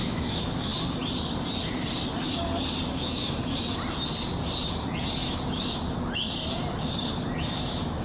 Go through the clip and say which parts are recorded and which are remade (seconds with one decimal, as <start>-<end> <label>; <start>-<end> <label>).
0.0-0.7 remade; 0.7-2.9 recorded; 2.9-3.4 remade; 3.4-7.4 recorded; 7.4-8.0 remade